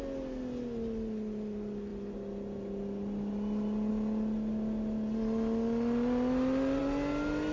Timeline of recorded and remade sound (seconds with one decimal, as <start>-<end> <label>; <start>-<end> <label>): 0.0-7.5 recorded